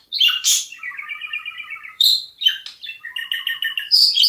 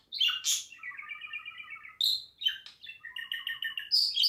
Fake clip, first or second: first